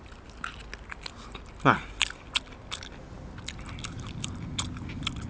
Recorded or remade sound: recorded